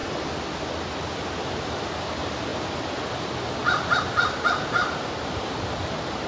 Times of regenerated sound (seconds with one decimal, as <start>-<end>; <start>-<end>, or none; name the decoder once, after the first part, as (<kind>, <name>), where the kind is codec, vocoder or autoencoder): 0.0-6.3 (vocoder, BigVGAN v2)